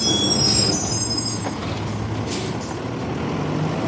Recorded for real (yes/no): yes